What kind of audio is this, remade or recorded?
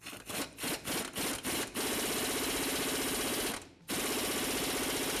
recorded